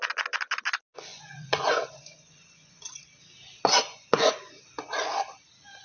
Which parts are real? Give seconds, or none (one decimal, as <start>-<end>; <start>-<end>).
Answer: 0.0-1.1; 3.0-3.9; 4.5-5.8